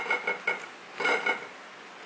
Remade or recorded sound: recorded